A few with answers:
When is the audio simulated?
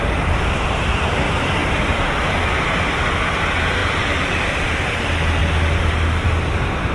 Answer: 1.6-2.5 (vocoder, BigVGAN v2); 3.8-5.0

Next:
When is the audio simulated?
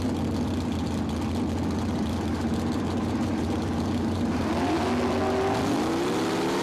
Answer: 2.3-4.5 (vocoder, BigVGAN v2)